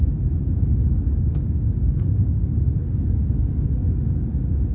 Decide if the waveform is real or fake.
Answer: fake